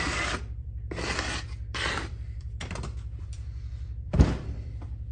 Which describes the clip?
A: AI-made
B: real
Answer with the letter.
A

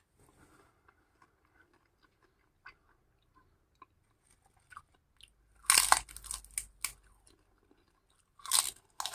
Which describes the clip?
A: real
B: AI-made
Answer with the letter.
A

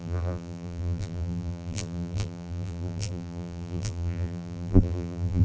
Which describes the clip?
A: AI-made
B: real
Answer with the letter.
A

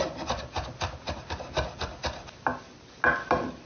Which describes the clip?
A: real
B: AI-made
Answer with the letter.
A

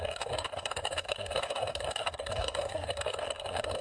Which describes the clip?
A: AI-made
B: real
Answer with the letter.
A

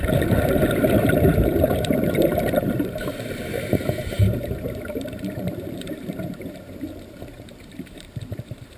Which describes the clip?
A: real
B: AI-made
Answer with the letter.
B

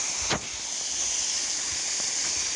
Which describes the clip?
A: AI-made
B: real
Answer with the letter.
B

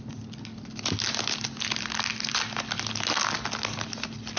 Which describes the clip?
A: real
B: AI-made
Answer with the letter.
A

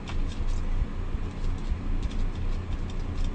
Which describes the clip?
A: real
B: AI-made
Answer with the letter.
A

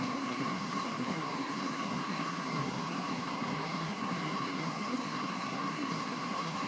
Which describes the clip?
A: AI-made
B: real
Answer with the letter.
A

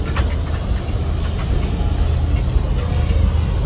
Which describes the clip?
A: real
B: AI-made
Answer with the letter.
A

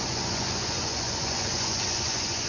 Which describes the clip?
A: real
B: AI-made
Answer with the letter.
B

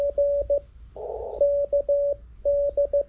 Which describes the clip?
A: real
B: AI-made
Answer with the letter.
A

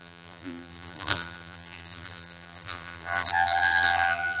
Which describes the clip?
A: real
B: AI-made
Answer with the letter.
B